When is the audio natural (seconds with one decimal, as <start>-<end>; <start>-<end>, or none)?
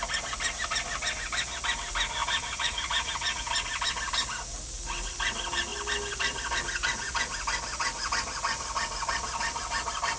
0.0-2.2; 3.5-10.2